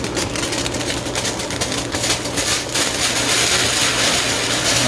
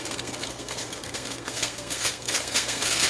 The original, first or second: first